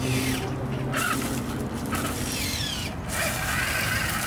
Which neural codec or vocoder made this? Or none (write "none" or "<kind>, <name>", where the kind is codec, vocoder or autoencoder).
none